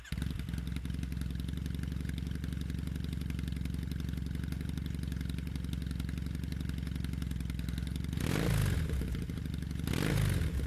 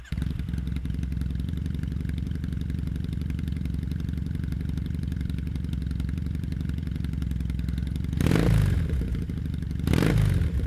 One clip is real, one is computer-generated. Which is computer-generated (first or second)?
second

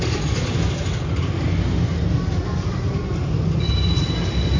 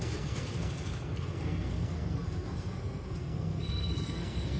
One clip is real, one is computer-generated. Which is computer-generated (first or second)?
second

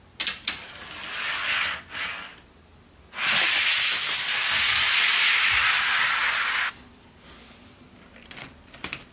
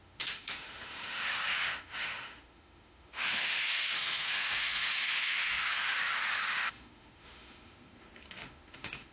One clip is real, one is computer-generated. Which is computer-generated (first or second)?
second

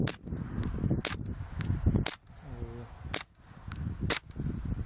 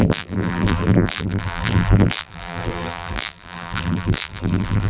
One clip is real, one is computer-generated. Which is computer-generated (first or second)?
second